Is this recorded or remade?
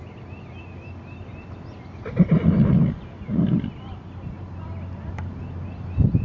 remade